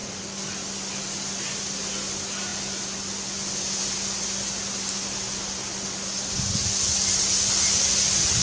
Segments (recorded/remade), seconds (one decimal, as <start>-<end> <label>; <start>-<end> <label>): 0.0-8.4 recorded